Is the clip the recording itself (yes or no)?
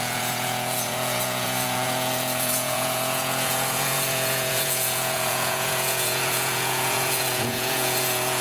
no